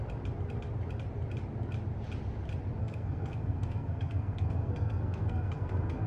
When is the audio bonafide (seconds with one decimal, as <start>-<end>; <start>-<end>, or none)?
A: 0.0-2.8